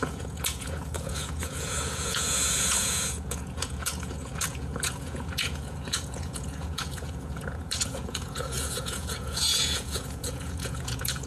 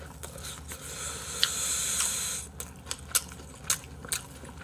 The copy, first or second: first